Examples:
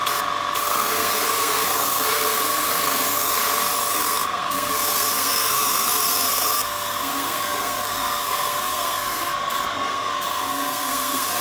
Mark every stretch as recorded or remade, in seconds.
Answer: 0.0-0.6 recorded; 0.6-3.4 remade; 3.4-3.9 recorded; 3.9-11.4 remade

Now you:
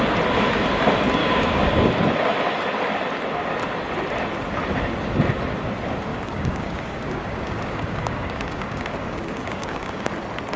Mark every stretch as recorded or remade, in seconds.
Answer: 0.0-1.2 recorded; 1.2-1.9 remade; 1.9-6.1 recorded; 6.1-10.1 remade; 10.1-10.6 recorded

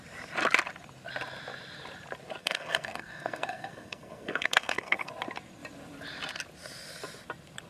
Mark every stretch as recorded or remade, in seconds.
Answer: 0.0-2.4 recorded; 2.4-5.1 remade; 5.1-7.7 recorded

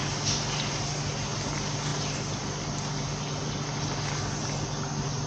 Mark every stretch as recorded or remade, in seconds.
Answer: 0.0-5.3 recorded

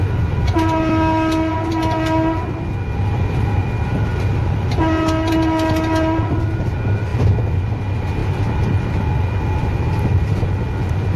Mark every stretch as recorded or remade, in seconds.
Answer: 0.0-11.2 recorded

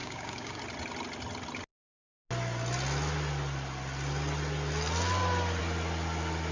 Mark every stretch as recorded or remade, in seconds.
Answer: 0.0-0.6 remade; 0.6-6.5 recorded

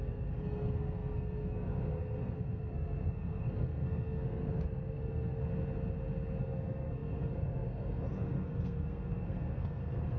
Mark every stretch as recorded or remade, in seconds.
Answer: 0.0-5.4 remade; 5.4-6.4 recorded; 6.4-10.2 remade